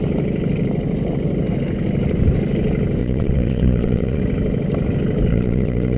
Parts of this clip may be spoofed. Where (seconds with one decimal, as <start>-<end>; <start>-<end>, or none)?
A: 3.0-4.2; 5.3-6.0